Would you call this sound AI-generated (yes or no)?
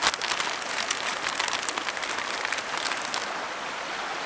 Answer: no